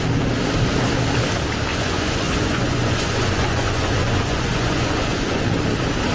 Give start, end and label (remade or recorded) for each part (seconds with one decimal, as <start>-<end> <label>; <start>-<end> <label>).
0.0-1.7 recorded; 1.7-5.4 remade; 5.4-6.1 recorded